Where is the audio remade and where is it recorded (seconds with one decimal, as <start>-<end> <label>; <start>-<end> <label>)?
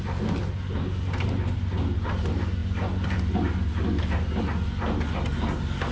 0.0-5.9 recorded